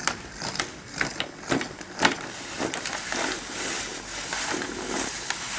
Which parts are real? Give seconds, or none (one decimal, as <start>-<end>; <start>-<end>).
0.0-5.6